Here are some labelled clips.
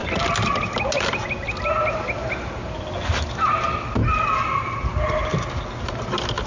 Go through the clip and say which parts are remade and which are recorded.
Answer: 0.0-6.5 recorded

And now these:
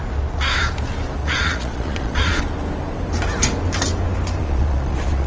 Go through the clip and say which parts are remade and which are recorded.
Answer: 0.0-1.2 recorded; 1.2-2.4 remade; 2.4-4.4 recorded; 4.4-5.3 remade

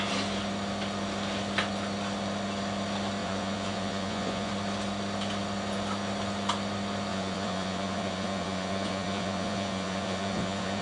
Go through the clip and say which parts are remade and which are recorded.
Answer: 0.0-3.2 recorded; 3.2-4.5 remade; 4.5-7.1 recorded; 7.1-10.8 remade

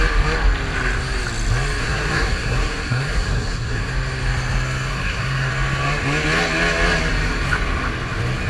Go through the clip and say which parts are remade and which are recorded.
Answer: 0.0-1.8 recorded; 1.8-3.9 remade; 3.9-4.9 recorded; 4.9-5.5 remade; 5.5-8.5 recorded